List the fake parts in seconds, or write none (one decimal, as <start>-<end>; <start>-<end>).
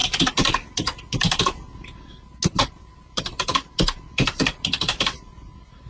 2.6-5.9